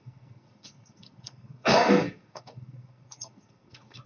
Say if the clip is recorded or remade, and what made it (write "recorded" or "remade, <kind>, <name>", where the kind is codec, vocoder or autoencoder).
remade, codec, SNAC